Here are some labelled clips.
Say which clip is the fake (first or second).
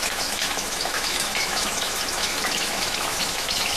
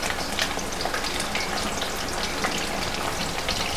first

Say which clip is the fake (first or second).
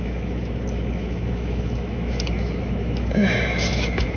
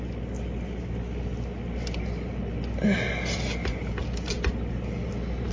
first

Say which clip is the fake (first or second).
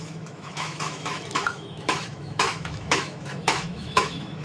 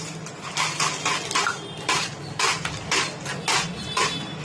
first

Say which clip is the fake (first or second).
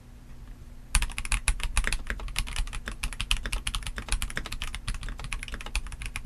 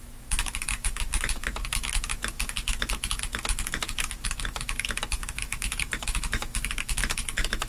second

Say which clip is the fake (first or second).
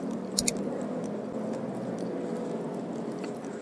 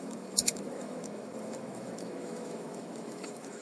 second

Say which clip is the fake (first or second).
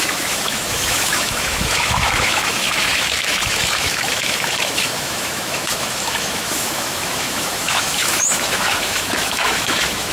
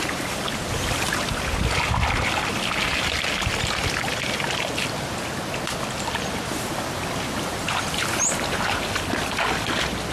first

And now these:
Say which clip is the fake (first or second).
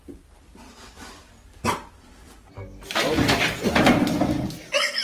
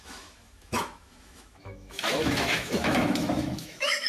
second